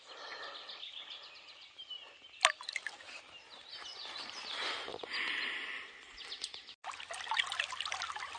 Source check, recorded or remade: recorded